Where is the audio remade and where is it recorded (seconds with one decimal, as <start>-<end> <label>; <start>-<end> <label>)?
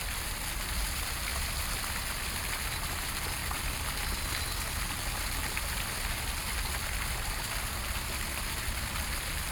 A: 0.0-1.3 recorded; 1.3-2.4 remade; 2.4-9.5 recorded